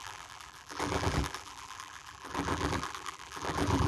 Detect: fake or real fake